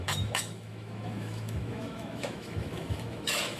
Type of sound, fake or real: fake